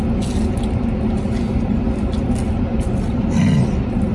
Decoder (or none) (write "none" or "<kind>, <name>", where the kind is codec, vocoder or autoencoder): none